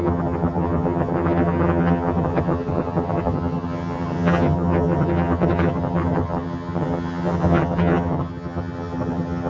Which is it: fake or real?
fake